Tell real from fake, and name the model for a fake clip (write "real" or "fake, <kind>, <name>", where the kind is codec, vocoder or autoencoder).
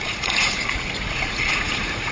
fake, vocoder, Vocos